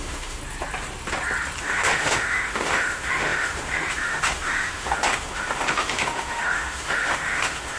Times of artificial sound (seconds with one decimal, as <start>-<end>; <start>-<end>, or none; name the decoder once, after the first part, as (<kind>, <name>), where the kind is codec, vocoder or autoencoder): 0.0-0.4 (autoencoder, DAC-VAE); 1.6-7.8